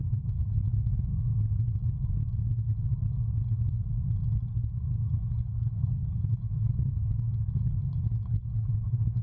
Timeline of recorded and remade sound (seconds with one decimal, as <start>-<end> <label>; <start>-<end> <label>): 0.0-1.1 remade; 1.1-5.1 recorded; 5.1-9.2 remade